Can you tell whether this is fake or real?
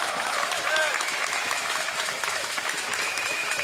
fake